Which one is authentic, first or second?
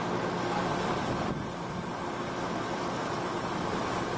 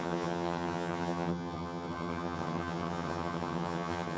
first